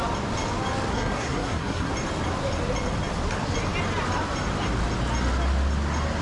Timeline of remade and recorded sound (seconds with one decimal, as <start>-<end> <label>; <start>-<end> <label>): 0.0-0.9 recorded; 0.9-1.9 remade; 1.9-6.2 recorded